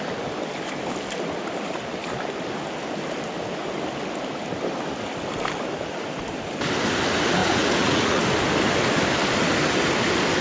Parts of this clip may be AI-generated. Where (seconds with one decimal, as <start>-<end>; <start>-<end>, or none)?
7.4-8.2